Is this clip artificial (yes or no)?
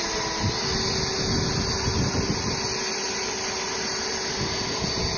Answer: no